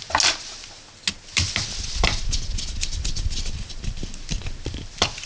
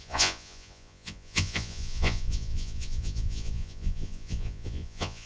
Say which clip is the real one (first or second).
first